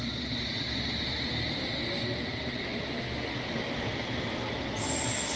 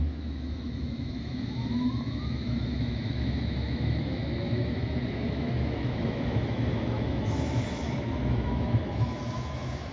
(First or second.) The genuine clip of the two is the first